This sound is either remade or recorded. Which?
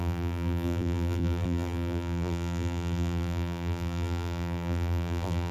remade